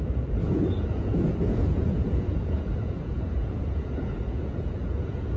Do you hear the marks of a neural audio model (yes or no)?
yes